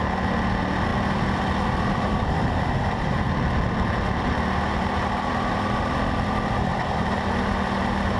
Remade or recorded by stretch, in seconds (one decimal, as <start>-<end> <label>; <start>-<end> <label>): 0.0-0.9 recorded; 0.9-5.8 remade; 5.8-8.2 recorded